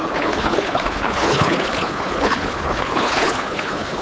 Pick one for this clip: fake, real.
fake